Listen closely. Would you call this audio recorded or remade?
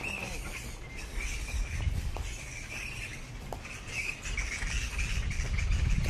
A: recorded